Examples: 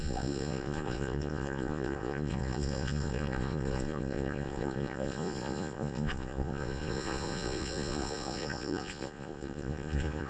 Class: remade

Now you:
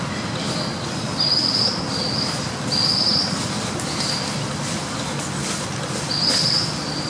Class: recorded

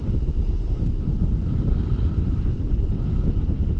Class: recorded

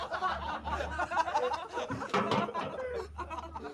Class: recorded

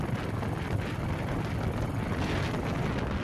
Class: recorded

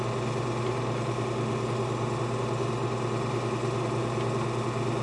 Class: recorded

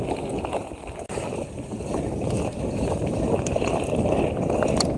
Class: recorded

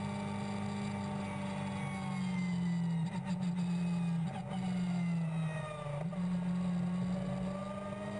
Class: recorded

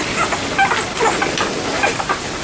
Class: recorded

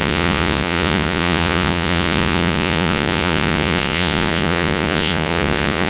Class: remade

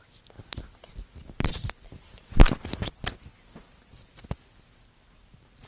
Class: recorded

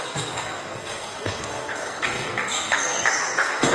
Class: remade